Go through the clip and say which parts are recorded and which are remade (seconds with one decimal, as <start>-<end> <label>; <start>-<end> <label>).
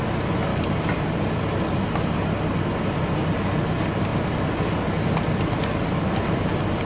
0.0-0.5 recorded; 0.5-1.4 remade; 1.4-4.1 recorded; 4.1-4.7 remade; 4.7-6.9 recorded